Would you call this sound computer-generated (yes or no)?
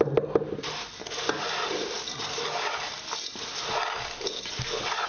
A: no